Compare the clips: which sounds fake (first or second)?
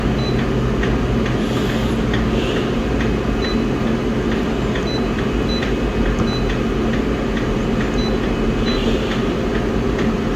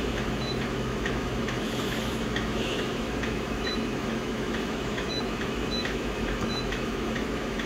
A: second